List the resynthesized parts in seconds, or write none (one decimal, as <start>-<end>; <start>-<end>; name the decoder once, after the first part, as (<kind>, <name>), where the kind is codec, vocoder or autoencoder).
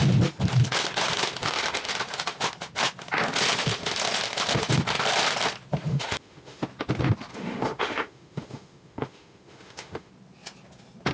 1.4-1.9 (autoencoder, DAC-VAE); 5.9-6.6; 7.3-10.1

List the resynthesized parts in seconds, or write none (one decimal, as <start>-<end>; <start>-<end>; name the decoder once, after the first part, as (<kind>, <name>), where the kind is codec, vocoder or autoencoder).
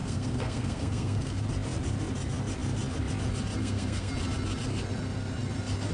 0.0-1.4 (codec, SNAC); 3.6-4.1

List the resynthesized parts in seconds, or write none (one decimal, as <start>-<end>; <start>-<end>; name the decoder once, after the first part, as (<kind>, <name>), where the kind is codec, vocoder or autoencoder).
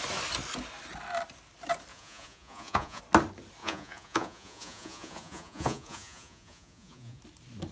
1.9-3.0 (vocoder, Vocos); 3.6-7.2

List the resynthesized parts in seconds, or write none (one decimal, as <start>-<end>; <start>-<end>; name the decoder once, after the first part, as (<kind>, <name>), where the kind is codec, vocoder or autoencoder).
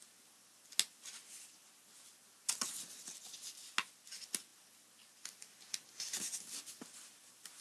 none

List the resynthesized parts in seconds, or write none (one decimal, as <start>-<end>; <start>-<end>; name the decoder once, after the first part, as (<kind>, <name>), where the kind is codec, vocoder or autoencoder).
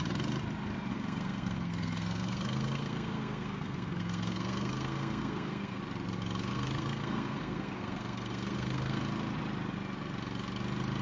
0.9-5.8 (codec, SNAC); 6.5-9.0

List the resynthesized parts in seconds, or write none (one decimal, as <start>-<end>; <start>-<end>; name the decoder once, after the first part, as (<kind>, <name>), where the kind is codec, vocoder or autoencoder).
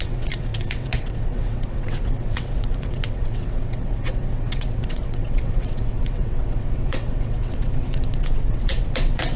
0.0-9.4 (vocoder, WaveNeXt)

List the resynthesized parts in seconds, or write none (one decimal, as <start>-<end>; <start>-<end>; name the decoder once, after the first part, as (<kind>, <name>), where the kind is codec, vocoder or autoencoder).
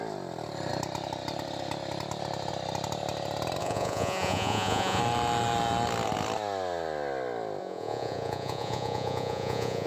3.6-5.0 (vocoder, Vocos); 7.6-9.9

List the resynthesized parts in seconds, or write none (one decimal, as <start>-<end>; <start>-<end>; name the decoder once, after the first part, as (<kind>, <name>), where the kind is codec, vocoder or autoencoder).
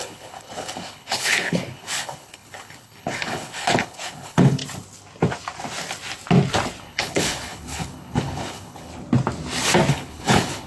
0.0-4.6 (codec, HILCodec); 6.8-8.9; 9.9-10.7